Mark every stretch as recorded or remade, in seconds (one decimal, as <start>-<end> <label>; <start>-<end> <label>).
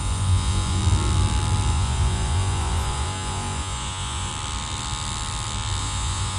0.0-0.8 remade; 0.8-1.7 recorded; 1.7-4.3 remade; 4.3-5.8 recorded; 5.8-6.4 remade